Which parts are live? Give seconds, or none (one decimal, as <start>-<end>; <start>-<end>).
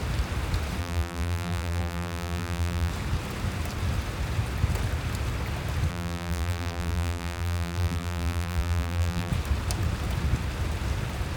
0.0-0.8; 2.9-5.9; 9.3-11.4